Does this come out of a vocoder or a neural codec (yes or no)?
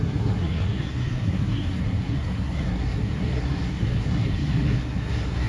yes